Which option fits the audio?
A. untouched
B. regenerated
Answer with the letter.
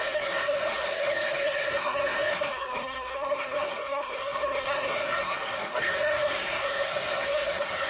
B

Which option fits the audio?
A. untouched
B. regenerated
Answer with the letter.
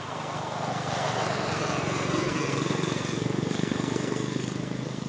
B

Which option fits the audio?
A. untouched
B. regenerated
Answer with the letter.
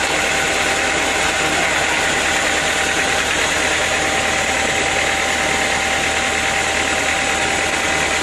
A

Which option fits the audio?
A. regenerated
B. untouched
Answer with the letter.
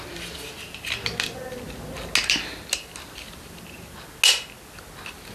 B